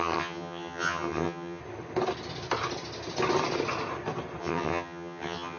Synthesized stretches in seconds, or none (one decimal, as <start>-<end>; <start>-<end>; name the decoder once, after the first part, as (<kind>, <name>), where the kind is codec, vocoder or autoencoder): 0.0-1.6 (vocoder, HiFi-GAN); 4.4-5.6